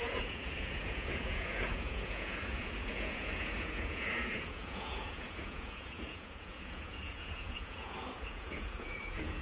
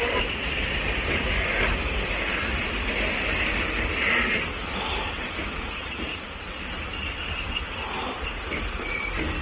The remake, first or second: first